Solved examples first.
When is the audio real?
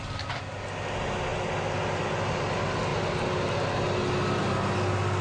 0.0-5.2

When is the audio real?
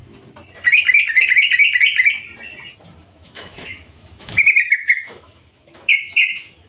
0.0-3.1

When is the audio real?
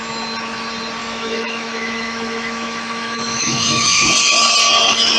0.0-1.0; 4.1-5.2